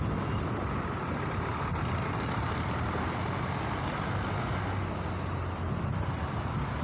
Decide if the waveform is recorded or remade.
recorded